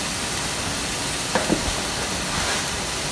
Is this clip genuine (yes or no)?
yes